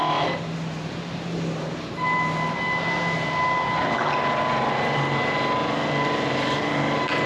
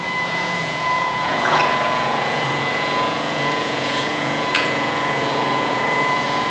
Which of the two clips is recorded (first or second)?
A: first